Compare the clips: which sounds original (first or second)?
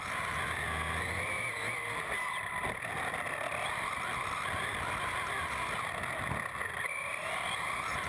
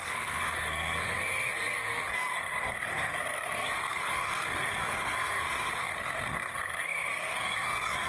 first